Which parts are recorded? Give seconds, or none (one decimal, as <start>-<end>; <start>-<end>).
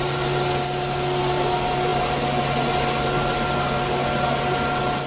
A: 0.0-5.1